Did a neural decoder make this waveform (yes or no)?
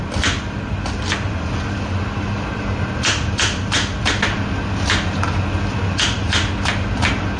no